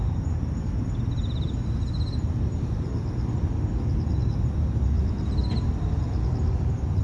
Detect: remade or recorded recorded